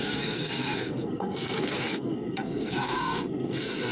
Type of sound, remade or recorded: remade